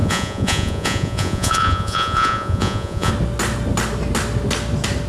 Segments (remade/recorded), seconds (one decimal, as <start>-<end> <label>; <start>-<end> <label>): 0.0-3.1 remade; 3.1-5.1 recorded